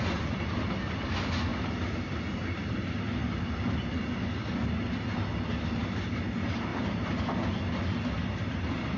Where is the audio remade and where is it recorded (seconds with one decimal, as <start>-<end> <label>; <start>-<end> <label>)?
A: 0.0-9.0 recorded